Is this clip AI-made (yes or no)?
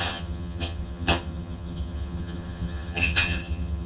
yes